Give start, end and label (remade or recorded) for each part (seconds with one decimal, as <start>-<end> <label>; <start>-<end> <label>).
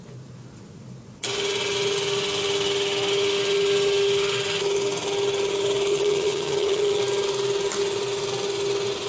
0.0-5.9 recorded; 5.9-7.0 remade; 7.0-9.1 recorded